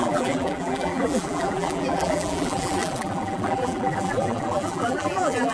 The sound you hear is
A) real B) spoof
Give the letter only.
B